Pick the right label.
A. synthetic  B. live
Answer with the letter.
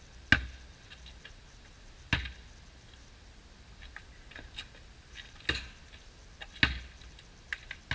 B